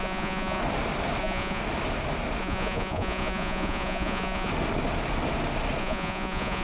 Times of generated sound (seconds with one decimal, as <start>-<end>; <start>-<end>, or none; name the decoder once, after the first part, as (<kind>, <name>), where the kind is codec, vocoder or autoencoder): 0.0-0.6 (vocoder, Vocos); 1.2-1.6; 2.4-4.5; 5.8-6.6